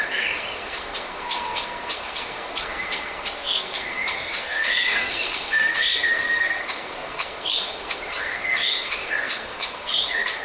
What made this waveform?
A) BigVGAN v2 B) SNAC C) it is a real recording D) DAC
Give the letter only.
B